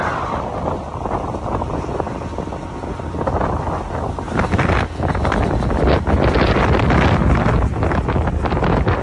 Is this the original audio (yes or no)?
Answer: yes